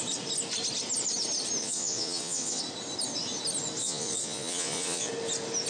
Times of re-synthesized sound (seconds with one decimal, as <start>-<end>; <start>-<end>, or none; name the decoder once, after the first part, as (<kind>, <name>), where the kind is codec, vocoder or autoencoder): 1.6-2.6 (vocoder, Vocos); 3.8-5.1